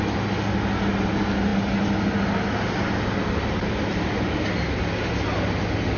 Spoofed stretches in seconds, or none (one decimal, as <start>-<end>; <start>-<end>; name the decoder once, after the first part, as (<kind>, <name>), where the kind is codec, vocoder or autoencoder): none